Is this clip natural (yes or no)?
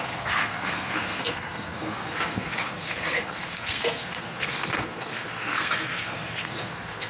no